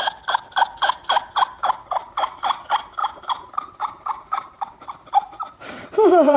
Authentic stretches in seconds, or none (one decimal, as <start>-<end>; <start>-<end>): 0.0-2.0; 2.6-3.0